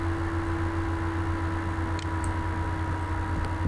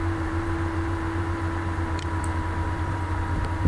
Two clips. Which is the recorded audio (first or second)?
first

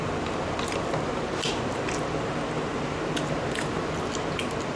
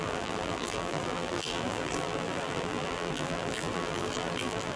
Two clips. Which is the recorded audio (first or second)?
first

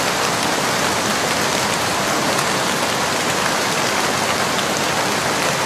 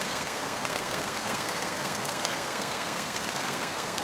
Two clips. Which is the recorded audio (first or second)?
first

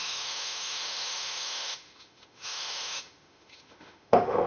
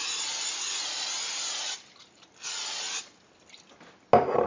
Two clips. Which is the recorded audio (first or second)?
second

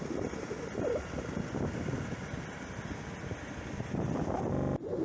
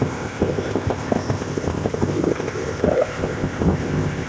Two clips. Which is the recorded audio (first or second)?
first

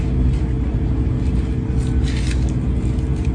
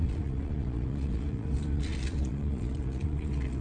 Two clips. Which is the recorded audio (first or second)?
first